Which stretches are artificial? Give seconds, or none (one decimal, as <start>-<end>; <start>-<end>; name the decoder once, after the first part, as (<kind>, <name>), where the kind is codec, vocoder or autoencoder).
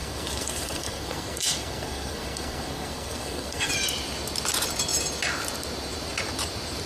0.0-3.7 (codec, SNAC)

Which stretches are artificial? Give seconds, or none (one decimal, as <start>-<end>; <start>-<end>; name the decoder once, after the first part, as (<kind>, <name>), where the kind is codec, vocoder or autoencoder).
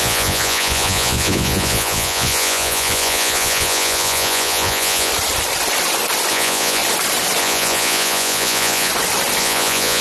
0.0-5.1 (vocoder, Vocos); 6.3-6.8; 7.4-8.9; 9.4-10.0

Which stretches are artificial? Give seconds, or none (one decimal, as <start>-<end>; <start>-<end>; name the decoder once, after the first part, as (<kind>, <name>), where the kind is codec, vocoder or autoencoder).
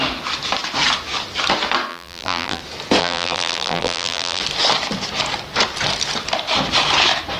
1.9-2.6 (vocoder, BigVGAN v2); 3.0-4.4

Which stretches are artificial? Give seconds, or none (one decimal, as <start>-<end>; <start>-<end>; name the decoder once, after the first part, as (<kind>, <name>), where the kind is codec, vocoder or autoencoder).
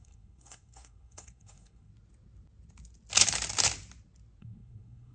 0.0-1.9 (codec, SNAC); 4.4-5.1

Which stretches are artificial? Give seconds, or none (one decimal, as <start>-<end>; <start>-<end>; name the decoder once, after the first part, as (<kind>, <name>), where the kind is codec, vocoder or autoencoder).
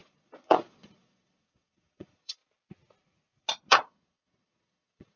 0.0-2.4 (vocoder, Vocos); 3.7-5.2